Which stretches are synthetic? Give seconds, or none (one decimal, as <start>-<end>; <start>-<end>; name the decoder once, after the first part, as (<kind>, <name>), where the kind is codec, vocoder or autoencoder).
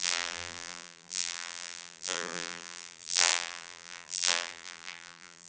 0.0-5.5 (vocoder, BigVGAN v2)